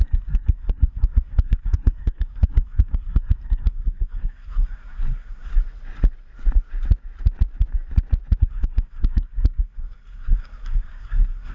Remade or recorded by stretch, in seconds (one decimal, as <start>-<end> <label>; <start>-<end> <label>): 0.0-5.5 remade; 5.5-8.4 recorded; 8.4-11.5 remade